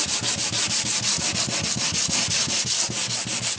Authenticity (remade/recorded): recorded